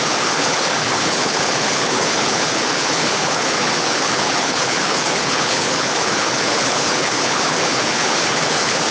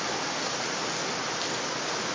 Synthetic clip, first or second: first